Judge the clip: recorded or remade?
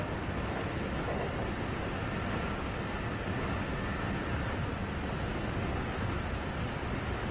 recorded